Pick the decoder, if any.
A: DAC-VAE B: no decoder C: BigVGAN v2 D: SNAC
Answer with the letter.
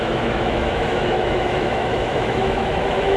A